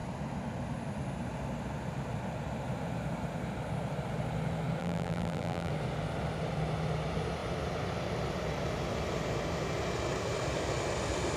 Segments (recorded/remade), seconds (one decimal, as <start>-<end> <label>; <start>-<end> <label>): 0.0-4.8 recorded; 4.8-5.7 remade; 5.7-11.4 recorded